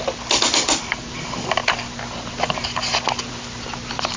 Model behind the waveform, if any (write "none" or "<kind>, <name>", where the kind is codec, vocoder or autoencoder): none